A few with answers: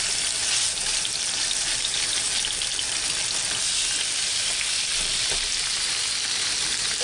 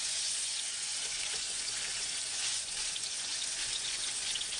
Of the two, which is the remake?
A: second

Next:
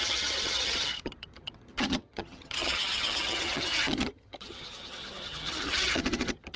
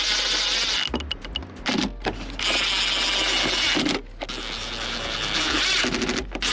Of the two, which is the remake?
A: first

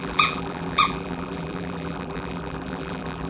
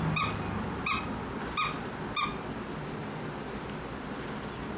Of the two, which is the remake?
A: first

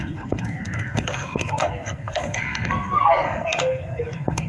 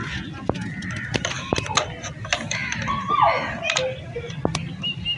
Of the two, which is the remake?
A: first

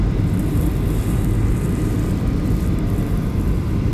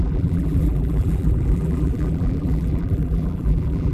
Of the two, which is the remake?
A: second